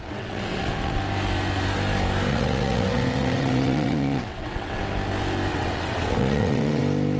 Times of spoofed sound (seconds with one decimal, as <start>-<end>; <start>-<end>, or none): 0.0-1.0; 2.3-4.8; 5.5-6.8